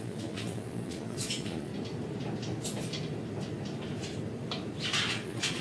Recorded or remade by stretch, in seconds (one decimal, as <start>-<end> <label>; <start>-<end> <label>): 0.0-1.7 remade; 1.7-5.1 recorded; 5.1-5.6 remade